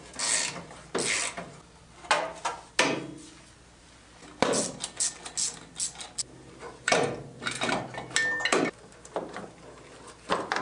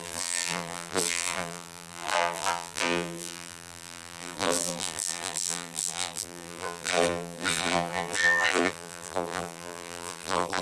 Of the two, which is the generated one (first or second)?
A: second